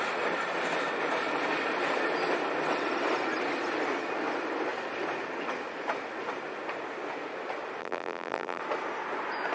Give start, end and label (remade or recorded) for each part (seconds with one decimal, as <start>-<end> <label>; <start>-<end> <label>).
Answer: 0.0-7.8 recorded; 7.8-8.6 remade; 8.6-9.5 recorded